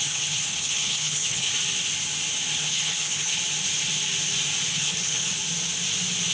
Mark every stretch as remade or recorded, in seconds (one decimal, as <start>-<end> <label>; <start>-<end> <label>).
0.0-1.5 remade; 1.5-2.6 recorded; 2.6-3.4 remade; 3.4-4.7 recorded; 4.7-5.3 remade; 5.3-6.3 recorded